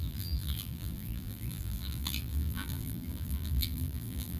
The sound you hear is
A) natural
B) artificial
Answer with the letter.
B